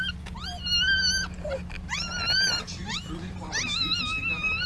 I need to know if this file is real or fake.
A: real